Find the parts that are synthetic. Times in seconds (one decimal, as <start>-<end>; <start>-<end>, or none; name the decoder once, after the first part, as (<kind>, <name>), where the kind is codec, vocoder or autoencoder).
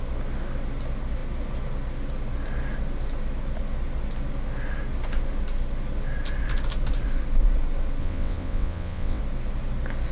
8.0-9.2 (vocoder, WaveNeXt)